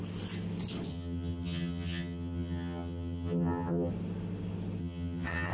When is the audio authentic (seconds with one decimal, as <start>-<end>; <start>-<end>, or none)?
0.0-0.9; 3.9-4.8